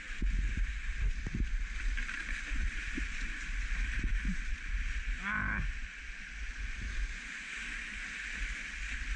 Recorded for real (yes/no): yes